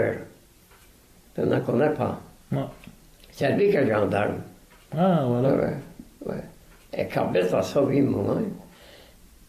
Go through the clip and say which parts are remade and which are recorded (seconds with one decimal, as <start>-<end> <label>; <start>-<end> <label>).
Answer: 0.0-9.5 recorded